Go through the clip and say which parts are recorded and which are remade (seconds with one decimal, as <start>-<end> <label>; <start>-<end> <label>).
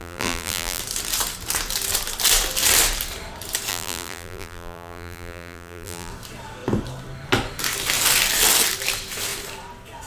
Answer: 0.0-0.8 remade; 0.8-3.7 recorded; 3.7-6.1 remade; 6.1-10.1 recorded